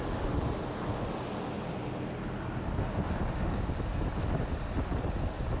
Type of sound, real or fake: real